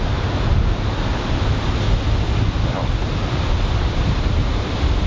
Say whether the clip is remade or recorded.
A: recorded